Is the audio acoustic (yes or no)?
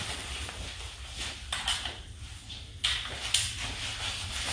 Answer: yes